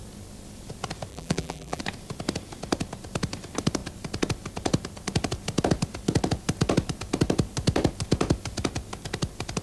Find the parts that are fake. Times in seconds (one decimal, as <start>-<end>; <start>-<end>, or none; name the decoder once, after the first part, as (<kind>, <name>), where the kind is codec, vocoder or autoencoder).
1.1-1.8 (vocoder, BigVGAN v2)